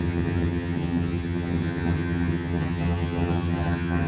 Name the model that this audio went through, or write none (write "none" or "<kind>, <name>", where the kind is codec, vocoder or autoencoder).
vocoder, HiFi-GAN